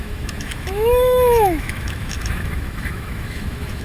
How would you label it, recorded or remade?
remade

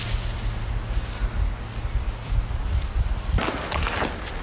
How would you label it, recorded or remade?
recorded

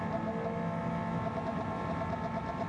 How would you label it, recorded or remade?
recorded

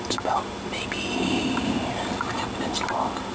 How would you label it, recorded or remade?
recorded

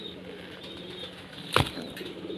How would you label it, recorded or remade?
recorded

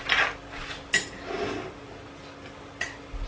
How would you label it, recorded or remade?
recorded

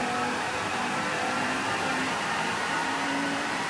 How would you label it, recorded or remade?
remade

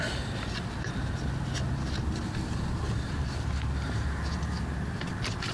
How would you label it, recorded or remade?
recorded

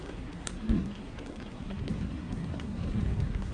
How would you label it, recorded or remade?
remade